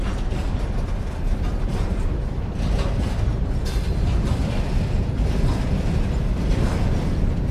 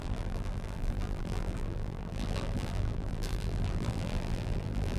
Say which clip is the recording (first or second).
first